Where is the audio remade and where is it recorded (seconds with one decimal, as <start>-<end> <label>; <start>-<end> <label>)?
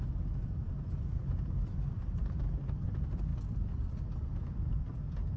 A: 0.0-0.6 recorded; 0.6-2.4 remade; 2.4-5.4 recorded